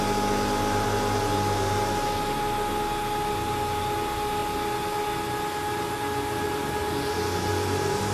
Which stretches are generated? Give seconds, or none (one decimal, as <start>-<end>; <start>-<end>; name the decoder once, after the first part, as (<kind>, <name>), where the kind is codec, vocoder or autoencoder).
none